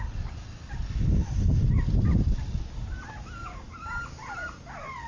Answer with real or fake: real